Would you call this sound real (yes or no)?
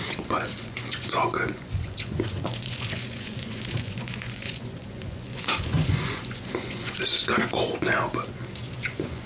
no